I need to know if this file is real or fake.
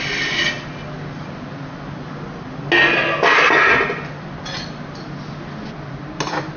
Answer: real